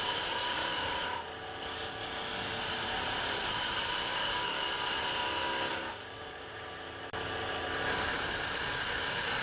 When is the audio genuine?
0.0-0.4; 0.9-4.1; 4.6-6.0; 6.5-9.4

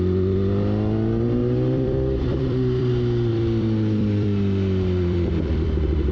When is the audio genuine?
0.0-1.4; 2.9-3.3

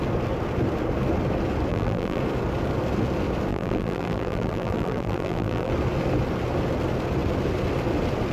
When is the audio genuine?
0.0-1.7; 2.2-3.5; 5.7-8.3

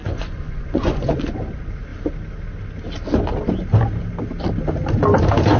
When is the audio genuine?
1.2-5.6

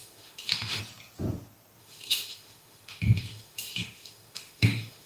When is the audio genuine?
0.8-1.8